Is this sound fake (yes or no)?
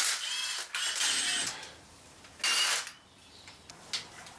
no